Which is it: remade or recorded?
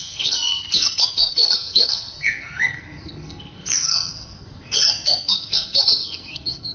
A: remade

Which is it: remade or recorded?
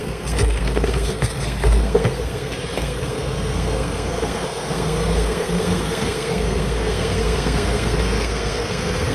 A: remade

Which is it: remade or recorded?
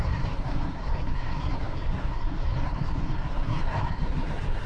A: remade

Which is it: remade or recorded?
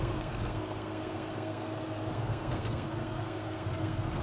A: remade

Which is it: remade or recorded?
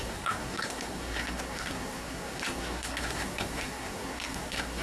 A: remade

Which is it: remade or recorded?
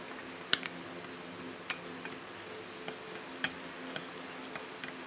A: recorded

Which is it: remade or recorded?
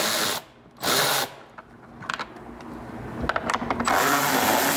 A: recorded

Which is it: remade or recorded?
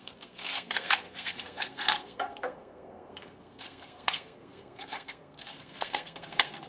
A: remade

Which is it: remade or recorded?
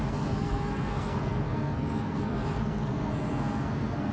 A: remade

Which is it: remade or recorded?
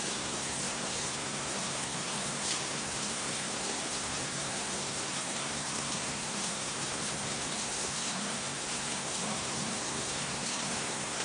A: remade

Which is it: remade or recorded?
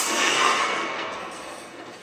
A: remade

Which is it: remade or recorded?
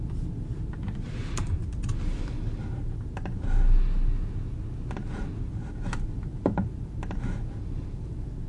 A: recorded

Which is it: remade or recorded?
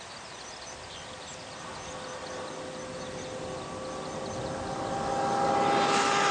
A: recorded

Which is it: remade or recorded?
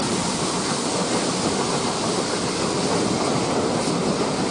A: recorded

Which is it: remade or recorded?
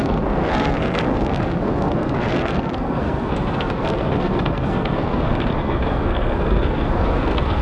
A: remade